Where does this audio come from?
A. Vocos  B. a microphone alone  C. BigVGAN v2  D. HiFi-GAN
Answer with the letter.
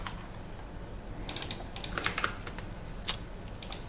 B